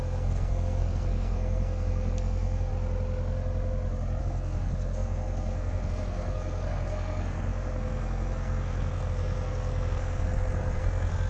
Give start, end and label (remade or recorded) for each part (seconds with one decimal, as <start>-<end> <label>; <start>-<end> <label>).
0.0-2.7 remade; 2.7-4.2 recorded; 4.2-11.3 remade